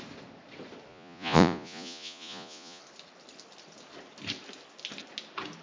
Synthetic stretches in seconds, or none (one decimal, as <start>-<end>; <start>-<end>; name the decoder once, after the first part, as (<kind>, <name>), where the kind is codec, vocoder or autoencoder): 0.9-2.8 (vocoder, Vocos)